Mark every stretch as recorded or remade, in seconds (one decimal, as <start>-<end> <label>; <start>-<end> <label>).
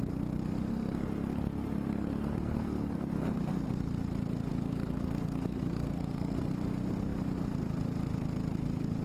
0.0-0.7 recorded; 0.7-3.4 remade; 3.4-4.5 recorded; 4.5-6.5 remade; 6.5-9.0 recorded